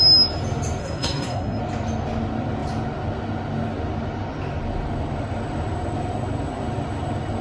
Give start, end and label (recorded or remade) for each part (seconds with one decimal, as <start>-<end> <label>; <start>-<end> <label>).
0.0-0.8 recorded; 0.8-1.6 remade; 1.6-7.4 recorded

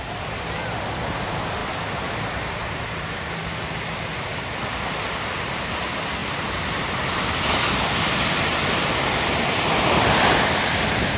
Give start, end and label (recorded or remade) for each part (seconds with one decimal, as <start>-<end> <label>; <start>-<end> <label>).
0.0-1.6 recorded; 1.6-2.4 remade; 2.4-6.2 recorded; 6.2-7.1 remade; 7.1-11.2 recorded

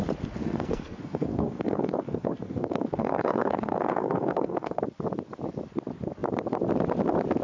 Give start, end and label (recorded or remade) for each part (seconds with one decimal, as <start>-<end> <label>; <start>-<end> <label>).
0.0-0.4 recorded; 0.4-4.8 remade; 4.8-7.4 recorded

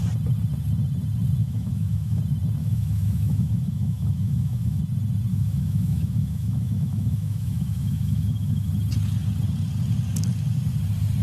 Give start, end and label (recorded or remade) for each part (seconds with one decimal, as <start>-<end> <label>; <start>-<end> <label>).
0.0-1.4 recorded; 1.4-2.2 remade; 2.2-2.6 recorded; 2.6-4.8 remade; 4.8-5.3 recorded; 5.3-8.7 remade; 8.7-11.2 recorded

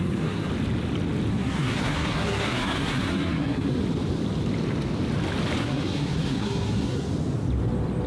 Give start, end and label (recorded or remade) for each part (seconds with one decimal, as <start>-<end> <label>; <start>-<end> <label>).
0.0-0.5 remade; 0.5-1.3 recorded; 1.3-3.8 remade; 3.8-5.6 recorded; 5.6-7.1 remade; 7.1-8.1 recorded

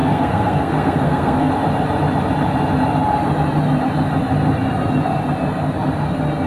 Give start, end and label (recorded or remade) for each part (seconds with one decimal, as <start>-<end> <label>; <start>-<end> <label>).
0.0-1.5 remade; 1.5-6.5 recorded

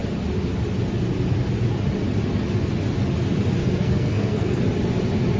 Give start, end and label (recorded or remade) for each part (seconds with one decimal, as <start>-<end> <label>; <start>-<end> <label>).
0.0-3.6 recorded; 3.6-4.6 remade; 4.6-5.4 recorded

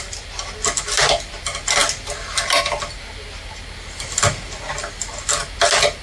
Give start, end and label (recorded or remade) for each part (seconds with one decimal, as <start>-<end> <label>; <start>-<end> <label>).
0.0-6.0 recorded